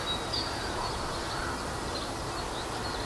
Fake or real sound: real